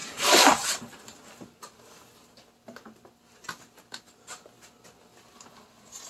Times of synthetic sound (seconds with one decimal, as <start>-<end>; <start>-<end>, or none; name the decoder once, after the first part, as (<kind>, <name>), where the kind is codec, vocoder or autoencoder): none